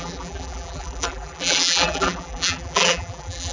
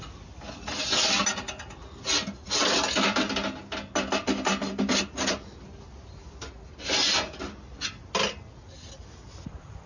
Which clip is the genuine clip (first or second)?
second